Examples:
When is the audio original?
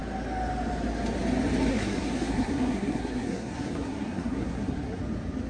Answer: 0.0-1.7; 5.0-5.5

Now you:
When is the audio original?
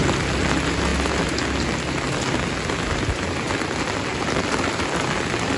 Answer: 0.0-5.6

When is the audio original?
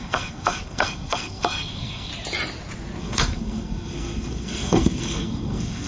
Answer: 2.1-3.0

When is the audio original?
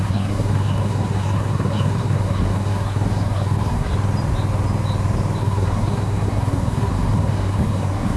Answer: 3.9-5.4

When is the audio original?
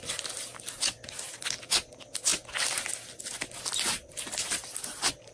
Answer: 0.0-5.3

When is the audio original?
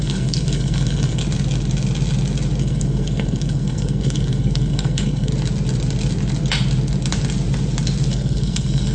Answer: 1.2-2.6; 5.3-8.1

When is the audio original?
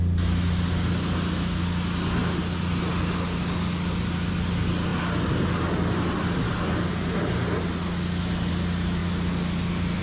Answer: 0.0-10.0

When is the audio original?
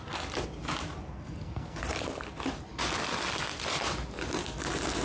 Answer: 0.0-1.0; 1.8-5.0